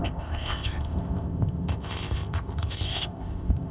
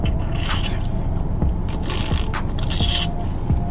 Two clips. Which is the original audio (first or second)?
second